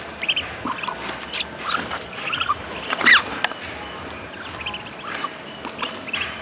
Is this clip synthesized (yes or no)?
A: no